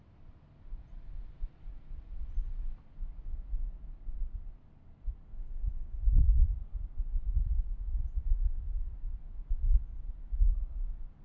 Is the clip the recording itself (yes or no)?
yes